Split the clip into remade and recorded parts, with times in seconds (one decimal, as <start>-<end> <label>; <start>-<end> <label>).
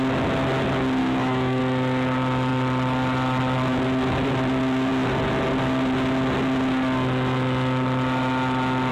0.0-1.0 recorded; 1.0-1.6 remade; 1.6-8.9 recorded